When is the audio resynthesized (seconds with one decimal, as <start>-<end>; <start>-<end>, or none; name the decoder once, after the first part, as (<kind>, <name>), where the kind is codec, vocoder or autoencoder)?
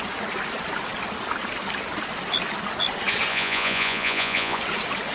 3.3-4.6 (vocoder, Vocos)